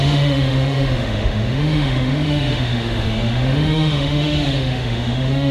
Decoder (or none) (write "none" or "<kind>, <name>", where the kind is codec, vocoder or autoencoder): autoencoder, DAC-VAE